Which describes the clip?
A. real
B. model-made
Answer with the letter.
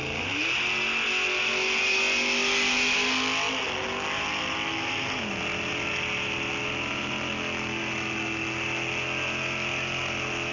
A